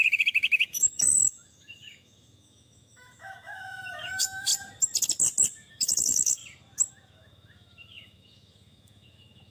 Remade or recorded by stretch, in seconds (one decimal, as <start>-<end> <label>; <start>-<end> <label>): 0.0-4.5 remade; 4.5-5.7 recorded; 5.7-6.4 remade; 6.4-6.9 recorded; 6.9-9.5 remade